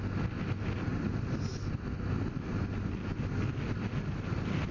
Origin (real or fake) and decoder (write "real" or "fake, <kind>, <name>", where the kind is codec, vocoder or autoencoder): real